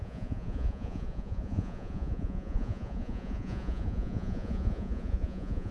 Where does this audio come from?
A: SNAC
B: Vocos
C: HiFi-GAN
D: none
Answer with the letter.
B